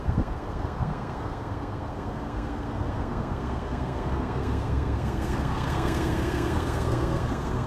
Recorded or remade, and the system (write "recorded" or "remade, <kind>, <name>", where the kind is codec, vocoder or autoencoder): remade, codec, SNAC